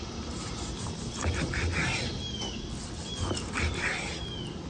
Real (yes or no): yes